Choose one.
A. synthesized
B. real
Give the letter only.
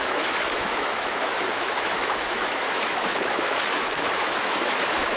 A